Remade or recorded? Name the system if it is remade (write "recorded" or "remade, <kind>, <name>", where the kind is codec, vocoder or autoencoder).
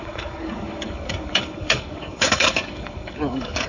remade, codec, DAC